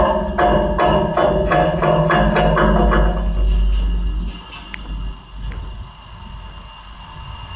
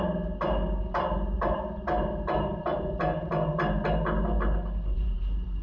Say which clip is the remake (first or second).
second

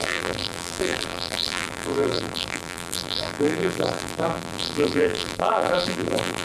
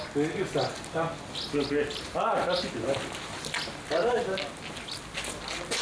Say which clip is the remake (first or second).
first